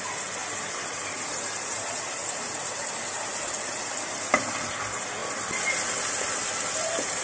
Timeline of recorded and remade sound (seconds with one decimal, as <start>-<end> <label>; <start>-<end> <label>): 0.0-0.4 recorded; 0.4-4.7 remade; 4.7-7.2 recorded